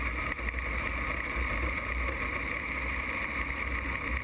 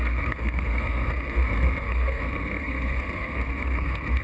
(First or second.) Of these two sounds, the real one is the first